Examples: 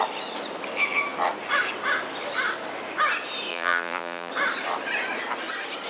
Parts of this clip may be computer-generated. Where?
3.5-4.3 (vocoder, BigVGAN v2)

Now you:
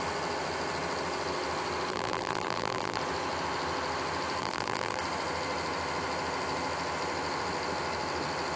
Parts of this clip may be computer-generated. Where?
1.9-3.0 (vocoder, BigVGAN v2); 4.4-5.0

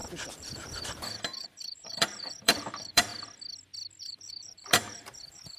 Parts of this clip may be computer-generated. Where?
0.0-3.1 (vocoder, BigVGAN v2); 4.0-5.6

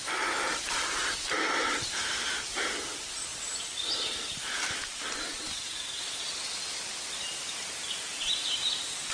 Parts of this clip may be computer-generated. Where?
0.0-2.0 (vocoder, BigVGAN v2); 2.6-9.1

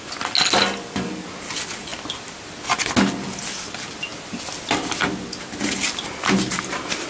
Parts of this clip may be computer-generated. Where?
1.9-2.8 (vocoder, BigVGAN v2)

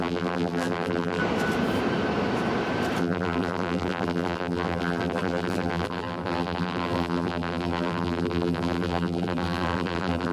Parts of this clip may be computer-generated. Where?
0.0-1.2 (vocoder, BigVGAN v2); 3.0-10.3